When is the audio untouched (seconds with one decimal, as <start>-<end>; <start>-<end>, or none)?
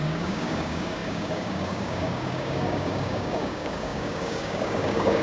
none